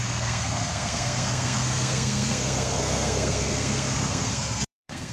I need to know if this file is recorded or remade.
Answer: remade